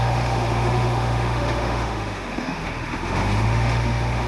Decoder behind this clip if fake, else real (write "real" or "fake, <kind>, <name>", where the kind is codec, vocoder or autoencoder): fake, autoencoder, DAC-VAE